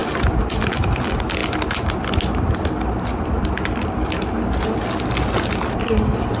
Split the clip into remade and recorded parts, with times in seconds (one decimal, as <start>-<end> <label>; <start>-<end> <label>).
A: 0.0-6.4 recorded